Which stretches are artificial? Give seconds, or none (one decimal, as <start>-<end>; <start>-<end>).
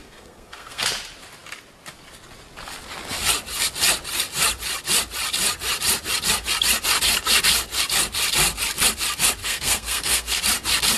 0.0-0.8; 9.4-10.4